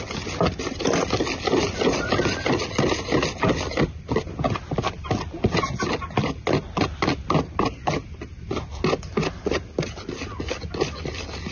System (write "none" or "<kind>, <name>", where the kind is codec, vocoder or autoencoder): none